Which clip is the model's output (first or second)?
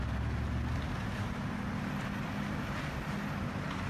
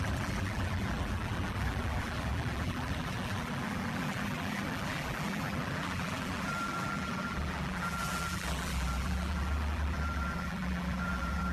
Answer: second